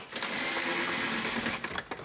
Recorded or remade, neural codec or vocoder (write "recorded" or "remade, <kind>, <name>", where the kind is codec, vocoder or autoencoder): recorded